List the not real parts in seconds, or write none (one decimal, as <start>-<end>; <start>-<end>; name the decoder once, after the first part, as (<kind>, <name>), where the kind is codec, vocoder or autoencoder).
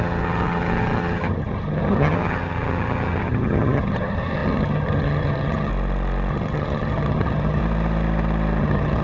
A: 0.0-5.7 (vocoder, HiFi-GAN); 6.3-7.6; 8.6-9.0